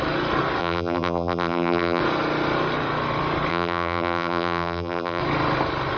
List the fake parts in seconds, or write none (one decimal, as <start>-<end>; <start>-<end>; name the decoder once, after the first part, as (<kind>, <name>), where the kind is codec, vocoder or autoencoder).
0.6-2.0 (vocoder, BigVGAN v2); 3.5-5.2